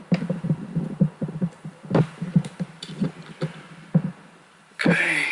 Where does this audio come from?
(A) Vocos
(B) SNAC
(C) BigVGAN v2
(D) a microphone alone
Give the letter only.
C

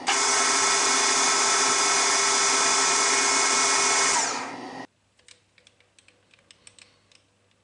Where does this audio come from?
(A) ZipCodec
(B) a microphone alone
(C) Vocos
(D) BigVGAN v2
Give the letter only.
B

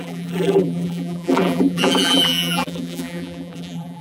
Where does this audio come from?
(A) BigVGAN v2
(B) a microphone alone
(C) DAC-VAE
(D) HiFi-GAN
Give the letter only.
A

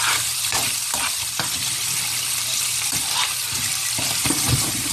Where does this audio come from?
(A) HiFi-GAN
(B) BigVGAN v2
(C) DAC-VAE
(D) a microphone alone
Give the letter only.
B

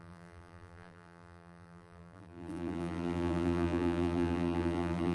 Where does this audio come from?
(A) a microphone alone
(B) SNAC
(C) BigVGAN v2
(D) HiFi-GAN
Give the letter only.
C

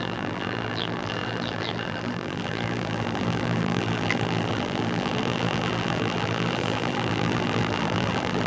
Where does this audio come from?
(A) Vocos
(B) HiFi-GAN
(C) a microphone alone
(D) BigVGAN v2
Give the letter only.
D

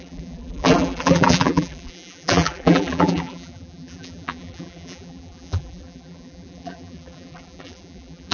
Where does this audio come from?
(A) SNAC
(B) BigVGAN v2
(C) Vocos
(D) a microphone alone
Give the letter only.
B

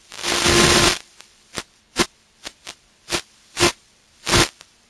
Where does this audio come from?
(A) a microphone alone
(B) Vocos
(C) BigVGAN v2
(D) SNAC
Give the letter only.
C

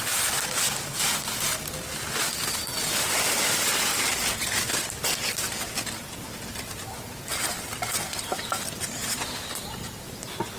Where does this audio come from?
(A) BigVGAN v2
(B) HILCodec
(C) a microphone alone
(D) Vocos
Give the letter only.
C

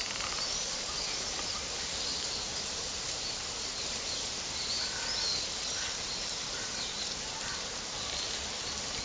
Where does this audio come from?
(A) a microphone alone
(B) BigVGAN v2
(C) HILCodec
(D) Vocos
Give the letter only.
B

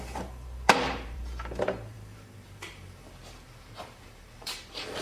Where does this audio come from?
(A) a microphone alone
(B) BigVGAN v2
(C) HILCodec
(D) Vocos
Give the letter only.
B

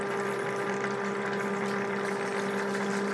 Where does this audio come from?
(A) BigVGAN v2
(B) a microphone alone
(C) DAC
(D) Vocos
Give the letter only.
B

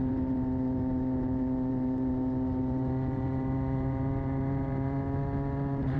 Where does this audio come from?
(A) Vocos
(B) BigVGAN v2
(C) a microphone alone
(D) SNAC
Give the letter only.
B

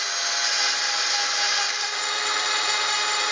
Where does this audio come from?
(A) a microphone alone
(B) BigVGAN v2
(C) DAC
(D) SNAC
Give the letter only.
A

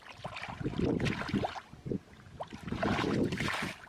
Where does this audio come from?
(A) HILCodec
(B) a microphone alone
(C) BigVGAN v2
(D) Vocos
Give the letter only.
B